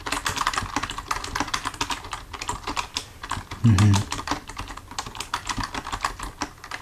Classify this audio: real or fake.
real